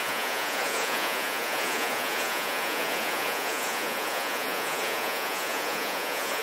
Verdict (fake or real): fake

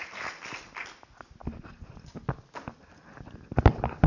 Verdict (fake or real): real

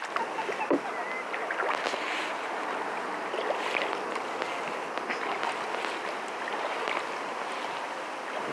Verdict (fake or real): real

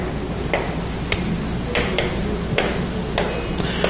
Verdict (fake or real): real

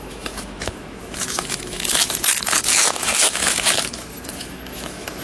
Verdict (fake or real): fake